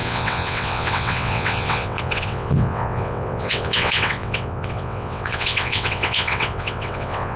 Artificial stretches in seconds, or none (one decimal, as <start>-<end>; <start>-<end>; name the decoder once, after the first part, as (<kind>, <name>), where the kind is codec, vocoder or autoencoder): 0.0-7.4 (vocoder, WaveNeXt)